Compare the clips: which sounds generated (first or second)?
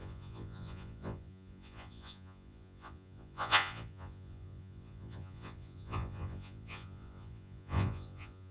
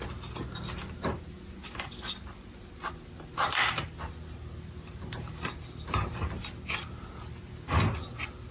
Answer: first